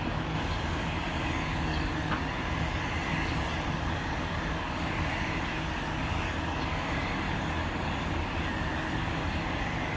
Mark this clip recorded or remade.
remade